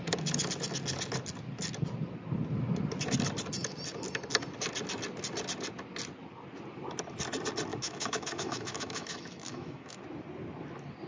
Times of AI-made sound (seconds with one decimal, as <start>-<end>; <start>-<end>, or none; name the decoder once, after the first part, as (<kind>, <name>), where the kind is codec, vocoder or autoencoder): 7.7-10.0 (autoencoder, DAC-VAE)